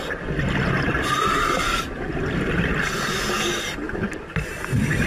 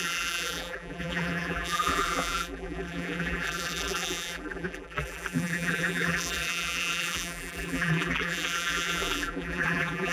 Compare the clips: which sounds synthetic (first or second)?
second